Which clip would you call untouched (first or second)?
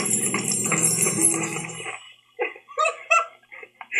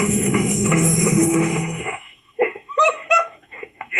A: first